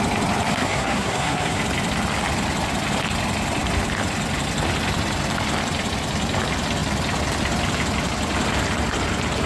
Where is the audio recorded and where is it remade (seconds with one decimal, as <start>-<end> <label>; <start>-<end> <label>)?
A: 0.0-0.5 recorded; 0.5-1.6 remade; 1.6-9.5 recorded